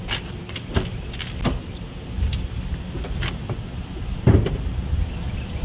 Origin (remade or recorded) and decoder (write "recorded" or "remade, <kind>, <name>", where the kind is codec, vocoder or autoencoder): recorded